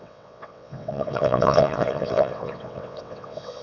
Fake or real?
fake